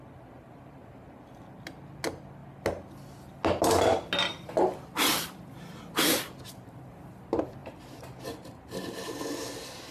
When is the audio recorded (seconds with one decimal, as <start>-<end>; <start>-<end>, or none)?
0.0-9.9